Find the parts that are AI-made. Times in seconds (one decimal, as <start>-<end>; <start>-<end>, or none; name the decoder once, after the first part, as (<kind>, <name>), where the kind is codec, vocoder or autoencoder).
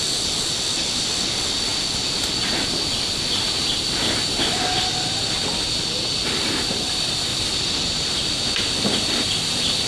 none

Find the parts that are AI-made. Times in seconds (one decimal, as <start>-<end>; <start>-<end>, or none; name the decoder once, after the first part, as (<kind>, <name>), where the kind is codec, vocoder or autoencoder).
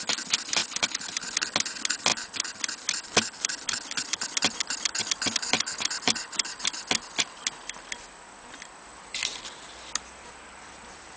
0.6-1.2 (vocoder, BigVGAN v2); 8.9-9.5